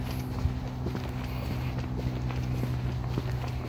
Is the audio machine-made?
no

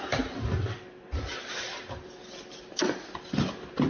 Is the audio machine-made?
no